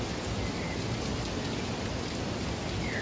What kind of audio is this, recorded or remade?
recorded